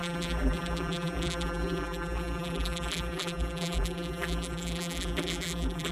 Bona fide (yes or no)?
no